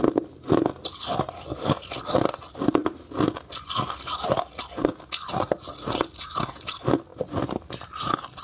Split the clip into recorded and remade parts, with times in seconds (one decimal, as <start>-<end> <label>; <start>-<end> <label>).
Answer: 0.0-8.4 recorded